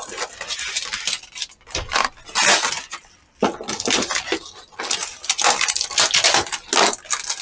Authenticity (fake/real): real